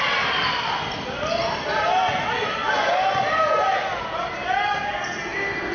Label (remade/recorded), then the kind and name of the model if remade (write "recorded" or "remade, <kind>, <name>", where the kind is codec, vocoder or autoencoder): recorded